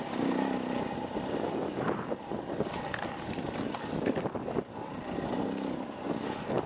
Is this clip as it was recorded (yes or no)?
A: yes